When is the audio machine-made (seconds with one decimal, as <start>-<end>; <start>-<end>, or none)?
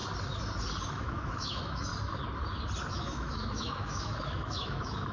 0.9-1.9; 2.9-5.1